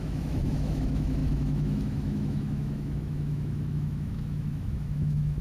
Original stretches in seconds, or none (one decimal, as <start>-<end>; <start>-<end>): none